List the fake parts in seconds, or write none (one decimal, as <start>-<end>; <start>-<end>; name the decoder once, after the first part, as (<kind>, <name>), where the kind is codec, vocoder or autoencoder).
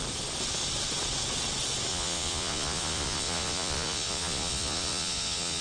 1.9-5.6 (vocoder, Vocos)